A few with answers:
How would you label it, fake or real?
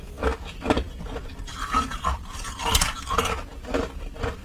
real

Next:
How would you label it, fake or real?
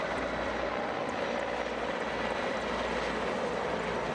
real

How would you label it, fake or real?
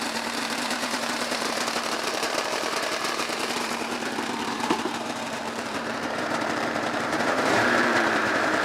fake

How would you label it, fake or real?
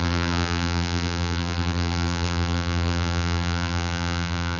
fake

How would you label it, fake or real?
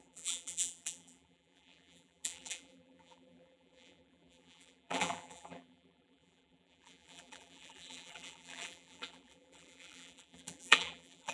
fake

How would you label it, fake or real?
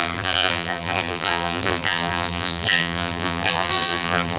fake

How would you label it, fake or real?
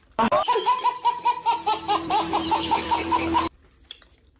fake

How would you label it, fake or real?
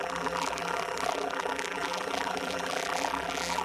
fake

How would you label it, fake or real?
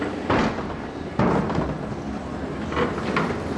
real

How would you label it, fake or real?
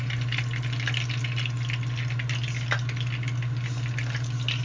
real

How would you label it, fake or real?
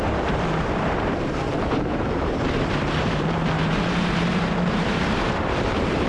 fake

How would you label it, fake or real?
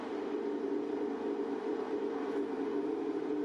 fake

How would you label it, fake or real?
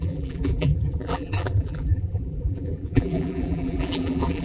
fake